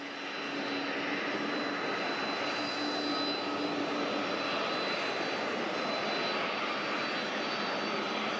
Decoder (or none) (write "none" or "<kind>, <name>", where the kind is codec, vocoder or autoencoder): none